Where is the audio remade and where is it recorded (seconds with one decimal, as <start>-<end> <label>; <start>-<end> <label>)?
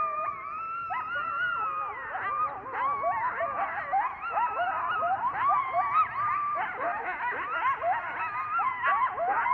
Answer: 0.0-3.4 recorded; 3.4-6.3 remade; 6.3-9.5 recorded